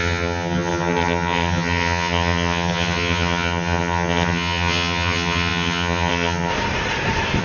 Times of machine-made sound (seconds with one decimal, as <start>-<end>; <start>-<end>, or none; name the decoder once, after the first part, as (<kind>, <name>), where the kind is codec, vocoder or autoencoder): 0.0-6.5 (vocoder, HiFi-GAN)